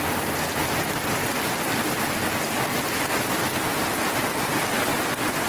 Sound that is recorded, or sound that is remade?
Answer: recorded